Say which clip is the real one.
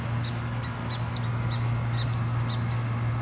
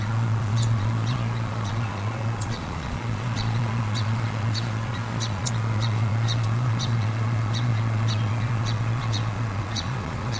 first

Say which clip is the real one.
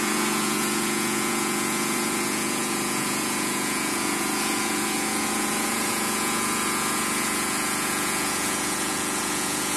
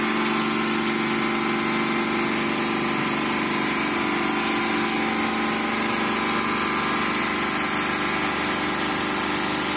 second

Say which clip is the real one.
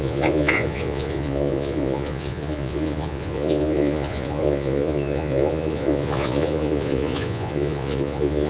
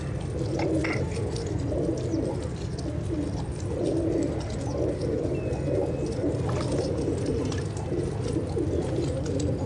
second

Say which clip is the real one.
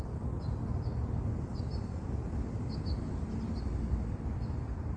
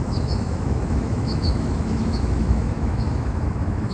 first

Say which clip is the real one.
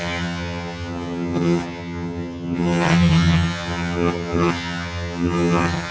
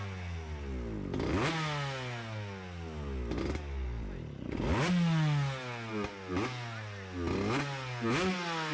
second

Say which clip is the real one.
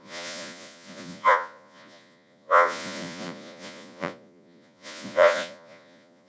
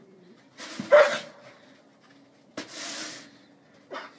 second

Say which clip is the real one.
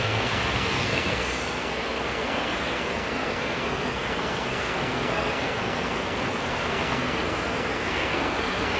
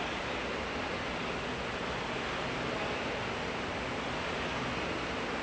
second